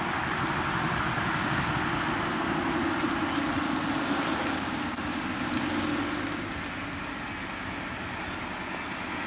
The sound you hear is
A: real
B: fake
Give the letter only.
A